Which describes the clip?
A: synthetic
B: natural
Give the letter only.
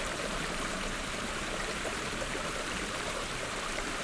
A